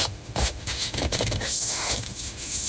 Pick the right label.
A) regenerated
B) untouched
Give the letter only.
A